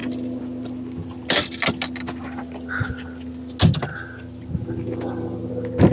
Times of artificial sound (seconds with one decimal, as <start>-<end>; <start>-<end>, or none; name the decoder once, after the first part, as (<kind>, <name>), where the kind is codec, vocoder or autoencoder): none